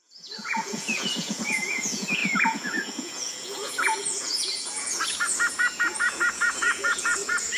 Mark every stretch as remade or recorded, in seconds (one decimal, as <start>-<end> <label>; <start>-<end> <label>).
0.0-7.6 remade